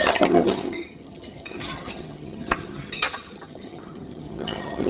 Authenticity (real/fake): fake